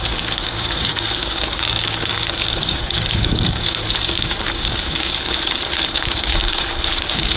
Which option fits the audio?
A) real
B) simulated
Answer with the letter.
B